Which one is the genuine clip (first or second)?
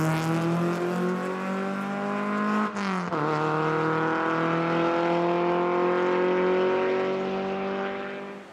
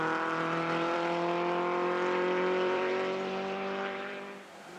first